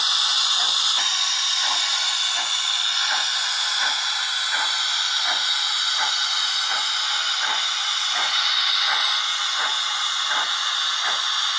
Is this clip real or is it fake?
fake